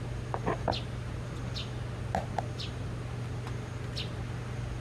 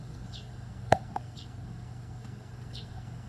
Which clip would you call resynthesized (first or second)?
second